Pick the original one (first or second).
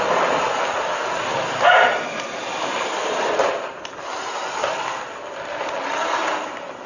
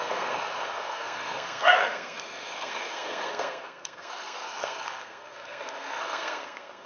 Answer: first